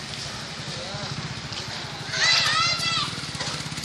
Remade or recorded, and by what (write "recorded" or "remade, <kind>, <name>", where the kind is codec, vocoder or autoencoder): recorded